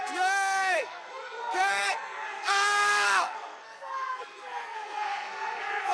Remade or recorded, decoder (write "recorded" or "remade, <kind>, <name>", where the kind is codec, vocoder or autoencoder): remade, codec, SNAC